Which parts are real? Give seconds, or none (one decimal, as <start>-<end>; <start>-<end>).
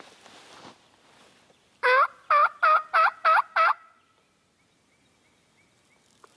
0.0-6.4